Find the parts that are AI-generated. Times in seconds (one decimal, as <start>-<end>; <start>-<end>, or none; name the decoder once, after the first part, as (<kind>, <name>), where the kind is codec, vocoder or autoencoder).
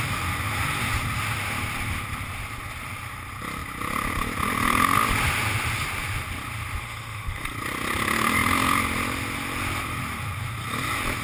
6.8-7.4 (autoencoder, DAC-VAE)